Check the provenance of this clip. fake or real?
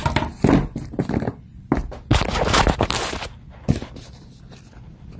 real